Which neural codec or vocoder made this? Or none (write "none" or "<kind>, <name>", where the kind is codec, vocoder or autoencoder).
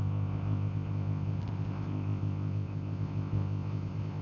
codec, ZipCodec